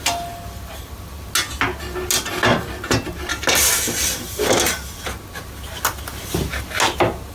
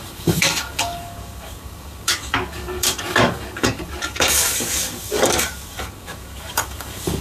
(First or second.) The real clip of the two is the first